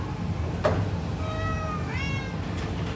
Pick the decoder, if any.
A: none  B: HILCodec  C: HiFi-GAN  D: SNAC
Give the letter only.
A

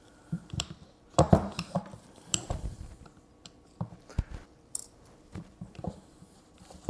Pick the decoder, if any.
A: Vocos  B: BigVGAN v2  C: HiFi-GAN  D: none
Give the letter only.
B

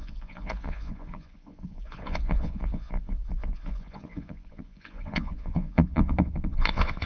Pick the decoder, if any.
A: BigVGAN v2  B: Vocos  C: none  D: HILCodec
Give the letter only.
B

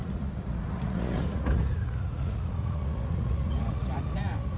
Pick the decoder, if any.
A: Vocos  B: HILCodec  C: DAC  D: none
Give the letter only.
A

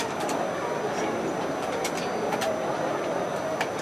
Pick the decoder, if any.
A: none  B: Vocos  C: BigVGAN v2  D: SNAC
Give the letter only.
A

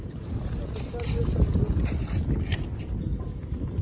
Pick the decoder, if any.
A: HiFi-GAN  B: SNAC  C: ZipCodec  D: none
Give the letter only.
D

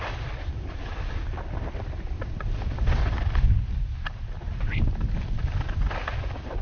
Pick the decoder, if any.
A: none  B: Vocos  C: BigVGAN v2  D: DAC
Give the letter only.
A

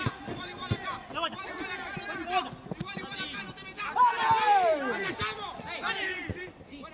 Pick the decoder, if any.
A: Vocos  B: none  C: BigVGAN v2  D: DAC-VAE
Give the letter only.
B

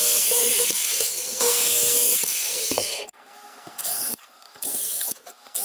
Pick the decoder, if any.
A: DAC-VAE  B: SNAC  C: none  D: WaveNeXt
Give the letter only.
B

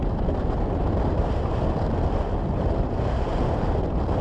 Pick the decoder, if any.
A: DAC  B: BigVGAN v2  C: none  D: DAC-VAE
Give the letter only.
C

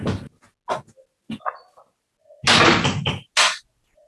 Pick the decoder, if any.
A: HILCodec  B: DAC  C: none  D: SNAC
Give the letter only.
C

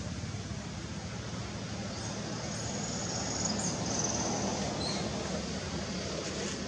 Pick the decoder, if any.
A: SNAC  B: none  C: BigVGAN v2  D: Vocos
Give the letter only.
B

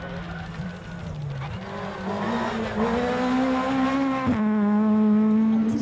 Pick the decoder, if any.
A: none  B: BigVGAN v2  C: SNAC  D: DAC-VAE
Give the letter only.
A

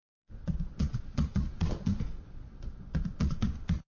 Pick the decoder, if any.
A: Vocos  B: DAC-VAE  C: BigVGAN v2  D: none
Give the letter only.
A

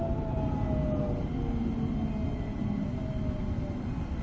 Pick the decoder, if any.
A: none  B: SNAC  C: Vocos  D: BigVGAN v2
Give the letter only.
A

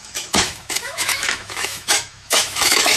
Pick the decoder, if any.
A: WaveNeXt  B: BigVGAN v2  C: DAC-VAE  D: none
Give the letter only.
C